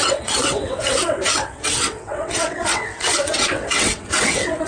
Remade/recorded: remade